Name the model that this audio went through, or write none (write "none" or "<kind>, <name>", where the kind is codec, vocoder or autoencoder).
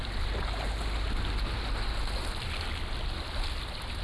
none